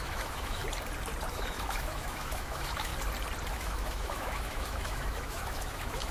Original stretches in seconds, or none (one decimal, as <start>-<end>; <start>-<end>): 0.6-1.3; 2.9-3.5